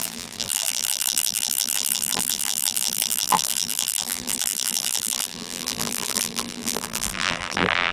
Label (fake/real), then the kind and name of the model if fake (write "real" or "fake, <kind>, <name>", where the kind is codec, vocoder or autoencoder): fake, vocoder, BigVGAN v2